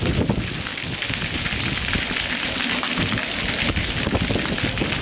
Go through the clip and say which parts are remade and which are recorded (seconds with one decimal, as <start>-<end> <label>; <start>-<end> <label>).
0.0-5.0 recorded